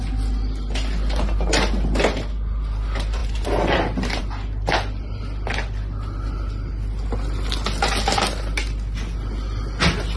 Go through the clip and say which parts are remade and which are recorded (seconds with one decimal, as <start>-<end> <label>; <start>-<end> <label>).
0.0-10.2 recorded